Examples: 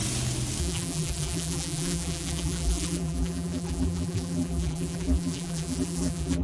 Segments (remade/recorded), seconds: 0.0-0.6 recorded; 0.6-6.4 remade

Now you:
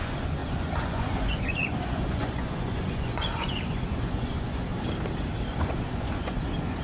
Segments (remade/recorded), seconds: 0.0-4.7 remade; 4.7-5.5 recorded; 5.5-6.8 remade

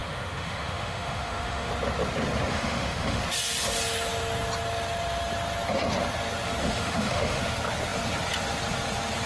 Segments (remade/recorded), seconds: 0.0-1.7 remade; 1.7-2.5 recorded; 2.5-3.2 remade; 3.2-6.6 recorded; 6.6-7.4 remade; 7.4-9.3 recorded

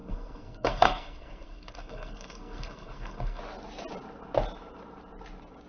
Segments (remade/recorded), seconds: 0.0-3.4 remade; 3.4-5.7 recorded